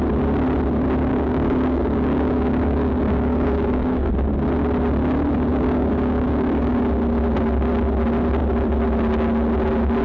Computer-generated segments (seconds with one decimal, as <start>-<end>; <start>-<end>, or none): 1.1-4.1; 5.5-6.8